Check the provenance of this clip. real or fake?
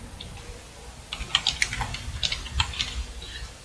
real